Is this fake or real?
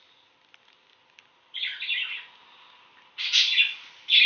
real